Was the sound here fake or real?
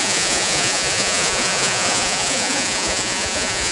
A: fake